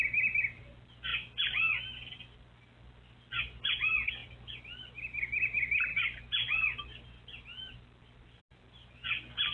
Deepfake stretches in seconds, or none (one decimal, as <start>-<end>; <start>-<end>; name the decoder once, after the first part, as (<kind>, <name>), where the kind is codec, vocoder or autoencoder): none